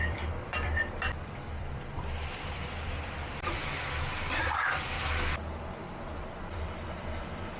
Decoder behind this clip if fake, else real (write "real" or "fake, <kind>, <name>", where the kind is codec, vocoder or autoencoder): fake, vocoder, BigVGAN v2